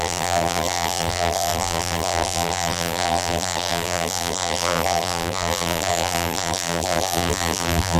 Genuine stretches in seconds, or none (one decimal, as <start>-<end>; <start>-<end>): none